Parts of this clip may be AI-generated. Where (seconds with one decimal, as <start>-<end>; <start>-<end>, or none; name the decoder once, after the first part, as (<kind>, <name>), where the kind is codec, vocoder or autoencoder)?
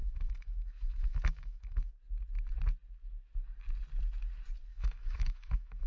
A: 0.0-1.9 (autoencoder, DAC-VAE); 4.7-5.9